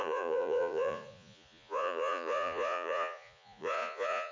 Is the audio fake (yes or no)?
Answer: yes